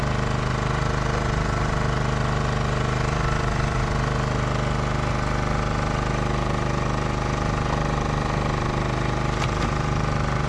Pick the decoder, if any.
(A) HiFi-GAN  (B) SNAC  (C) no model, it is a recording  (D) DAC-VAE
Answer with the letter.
C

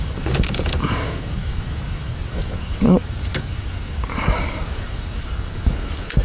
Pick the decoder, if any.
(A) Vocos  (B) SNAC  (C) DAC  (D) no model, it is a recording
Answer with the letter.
C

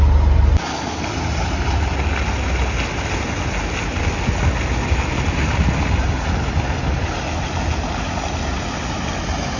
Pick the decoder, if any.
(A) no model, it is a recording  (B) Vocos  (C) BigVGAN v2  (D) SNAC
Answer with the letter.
A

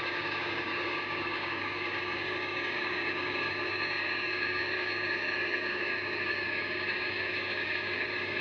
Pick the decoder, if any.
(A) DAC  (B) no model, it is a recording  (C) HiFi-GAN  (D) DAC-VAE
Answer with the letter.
A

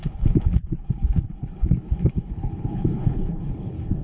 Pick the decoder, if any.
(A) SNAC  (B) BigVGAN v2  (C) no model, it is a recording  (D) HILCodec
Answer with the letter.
D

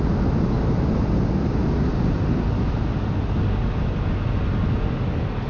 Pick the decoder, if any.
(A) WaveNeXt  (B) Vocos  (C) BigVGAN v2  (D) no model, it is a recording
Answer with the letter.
D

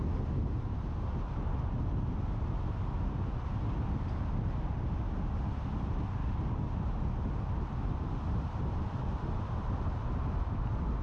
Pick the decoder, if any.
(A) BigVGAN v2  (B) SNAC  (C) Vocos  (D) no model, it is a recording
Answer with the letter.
D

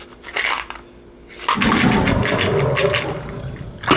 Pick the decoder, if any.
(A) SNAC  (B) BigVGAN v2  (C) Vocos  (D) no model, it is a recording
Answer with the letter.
D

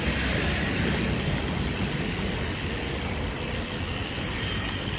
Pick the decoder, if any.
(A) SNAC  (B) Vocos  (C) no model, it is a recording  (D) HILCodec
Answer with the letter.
C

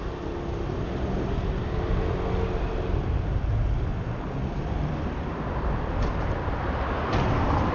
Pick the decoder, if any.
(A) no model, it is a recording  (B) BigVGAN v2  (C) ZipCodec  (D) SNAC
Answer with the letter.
A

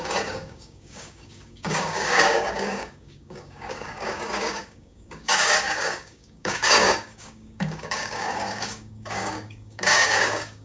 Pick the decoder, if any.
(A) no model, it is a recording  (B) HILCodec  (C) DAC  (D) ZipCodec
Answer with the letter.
C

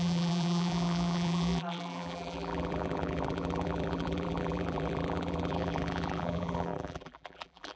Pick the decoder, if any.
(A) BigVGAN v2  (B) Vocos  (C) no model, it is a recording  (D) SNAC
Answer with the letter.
A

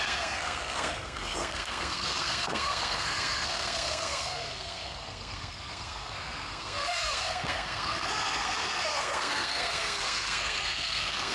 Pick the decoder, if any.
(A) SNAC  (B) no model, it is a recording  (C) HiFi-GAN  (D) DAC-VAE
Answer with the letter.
A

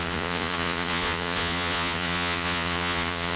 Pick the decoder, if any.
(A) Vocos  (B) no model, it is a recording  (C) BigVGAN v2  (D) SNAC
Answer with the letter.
A